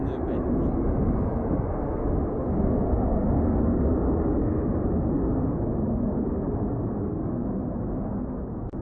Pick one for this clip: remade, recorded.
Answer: recorded